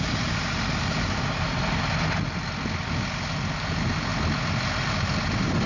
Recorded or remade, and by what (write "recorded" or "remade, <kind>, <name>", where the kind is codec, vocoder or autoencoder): recorded